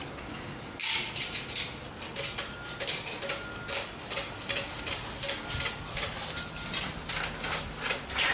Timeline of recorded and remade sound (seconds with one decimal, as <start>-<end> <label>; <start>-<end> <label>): 0.0-8.3 recorded